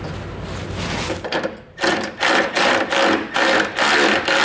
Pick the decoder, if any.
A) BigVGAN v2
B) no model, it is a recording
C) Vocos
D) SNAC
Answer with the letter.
B